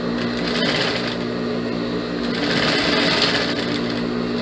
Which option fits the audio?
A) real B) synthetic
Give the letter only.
A